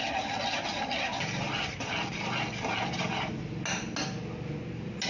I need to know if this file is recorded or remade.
recorded